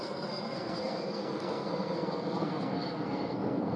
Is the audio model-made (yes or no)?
yes